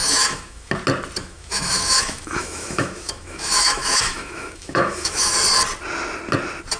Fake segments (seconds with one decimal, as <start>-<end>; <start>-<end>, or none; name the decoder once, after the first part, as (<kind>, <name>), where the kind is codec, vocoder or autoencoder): 0.0-0.7 (autoencoder, DAC-VAE); 1.2-5.3